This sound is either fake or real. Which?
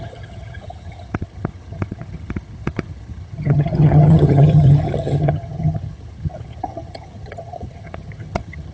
fake